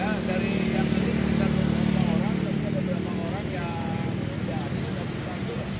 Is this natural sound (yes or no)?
yes